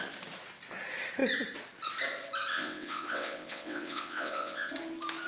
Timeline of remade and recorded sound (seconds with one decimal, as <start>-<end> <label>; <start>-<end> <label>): 0.0-2.5 recorded; 2.5-4.7 remade; 4.7-5.3 recorded